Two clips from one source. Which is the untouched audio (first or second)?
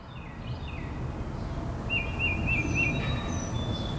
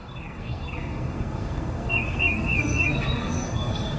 first